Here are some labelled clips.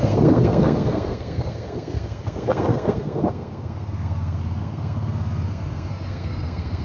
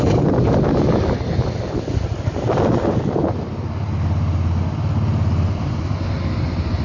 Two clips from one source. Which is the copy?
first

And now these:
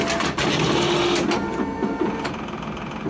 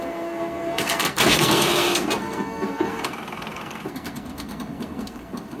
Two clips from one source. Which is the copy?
second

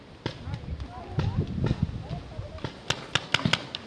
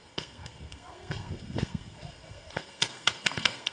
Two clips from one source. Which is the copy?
second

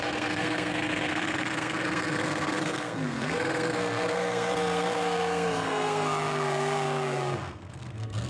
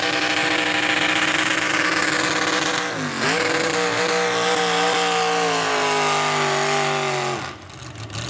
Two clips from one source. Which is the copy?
first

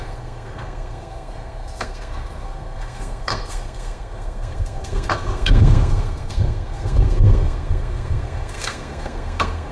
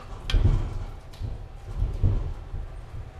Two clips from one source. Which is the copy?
first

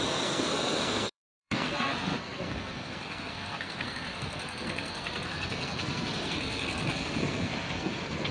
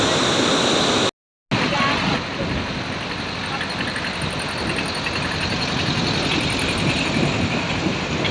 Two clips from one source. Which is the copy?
first